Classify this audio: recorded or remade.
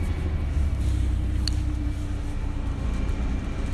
recorded